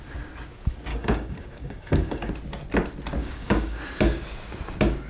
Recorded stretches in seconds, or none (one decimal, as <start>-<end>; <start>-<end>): 0.0-0.9; 2.3-3.2; 3.8-5.1

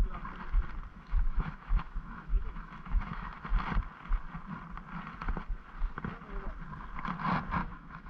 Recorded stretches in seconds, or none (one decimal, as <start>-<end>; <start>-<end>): 0.0-0.9; 3.4-7.6

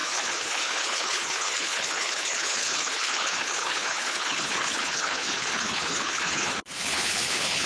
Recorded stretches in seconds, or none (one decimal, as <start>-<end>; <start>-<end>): none

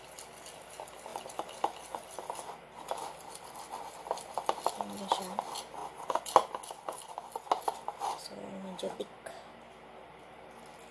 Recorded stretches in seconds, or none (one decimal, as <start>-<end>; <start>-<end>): 0.0-10.9